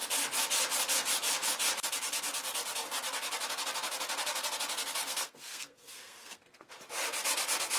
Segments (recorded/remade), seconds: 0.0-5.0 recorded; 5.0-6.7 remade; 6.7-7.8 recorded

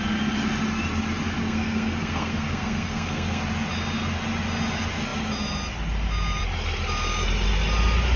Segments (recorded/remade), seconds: 0.0-1.4 recorded; 1.4-3.4 remade; 3.4-8.2 recorded

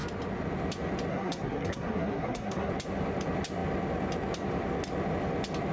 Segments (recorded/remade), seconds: 0.0-1.1 recorded; 1.1-2.7 remade; 2.7-5.7 recorded